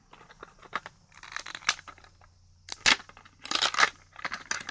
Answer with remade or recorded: recorded